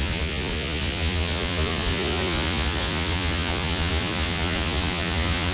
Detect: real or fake fake